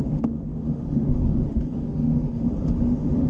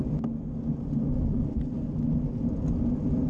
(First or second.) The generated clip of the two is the first